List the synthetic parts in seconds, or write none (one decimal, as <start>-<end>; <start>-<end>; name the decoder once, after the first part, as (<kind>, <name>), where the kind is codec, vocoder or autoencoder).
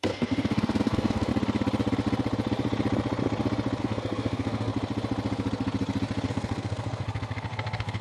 0.0-1.3 (codec, SNAC); 3.8-4.7; 6.3-8.0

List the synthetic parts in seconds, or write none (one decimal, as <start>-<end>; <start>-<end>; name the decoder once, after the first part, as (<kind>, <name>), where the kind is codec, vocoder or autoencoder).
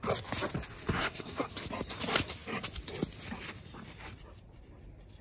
0.8-1.5 (codec, SNAC)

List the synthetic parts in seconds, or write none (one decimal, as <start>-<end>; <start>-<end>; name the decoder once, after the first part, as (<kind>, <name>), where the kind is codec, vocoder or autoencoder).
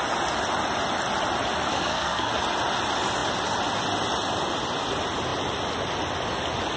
1.7-2.3 (codec, SNAC)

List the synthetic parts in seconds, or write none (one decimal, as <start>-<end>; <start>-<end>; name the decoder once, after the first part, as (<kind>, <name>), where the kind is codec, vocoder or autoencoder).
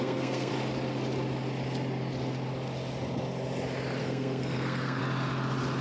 0.0-0.5 (codec, SNAC); 4.0-5.0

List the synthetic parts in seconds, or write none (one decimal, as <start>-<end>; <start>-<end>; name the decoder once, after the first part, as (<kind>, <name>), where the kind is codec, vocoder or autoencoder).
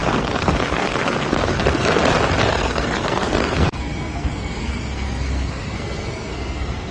0.0-2.0 (codec, SNAC); 2.5-6.9